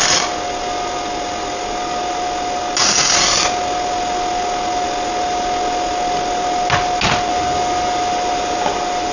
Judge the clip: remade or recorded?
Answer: recorded